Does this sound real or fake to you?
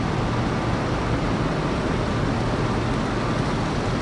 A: real